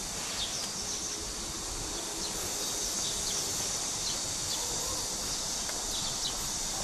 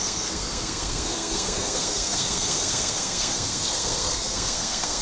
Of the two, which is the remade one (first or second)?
second